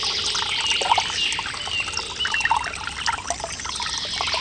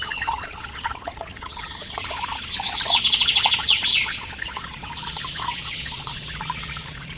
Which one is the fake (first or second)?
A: second